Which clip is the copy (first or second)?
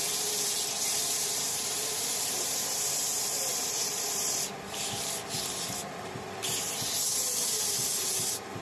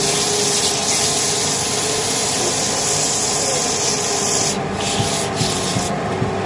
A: first